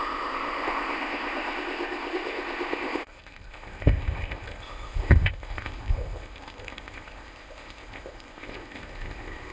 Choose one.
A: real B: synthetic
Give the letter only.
B